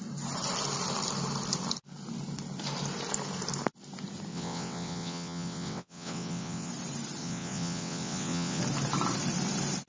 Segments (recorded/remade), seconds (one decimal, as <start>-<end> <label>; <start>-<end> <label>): 0.0-4.3 recorded; 4.3-6.7 remade; 6.7-7.2 recorded; 7.2-8.6 remade; 8.6-9.9 recorded